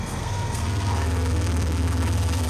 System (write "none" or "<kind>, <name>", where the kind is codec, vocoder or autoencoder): codec, SNAC